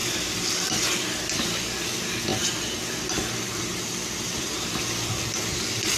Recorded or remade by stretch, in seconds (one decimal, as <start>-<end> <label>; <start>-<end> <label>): 0.0-6.0 recorded